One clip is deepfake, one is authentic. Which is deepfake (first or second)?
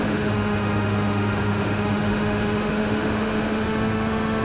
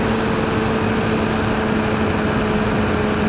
first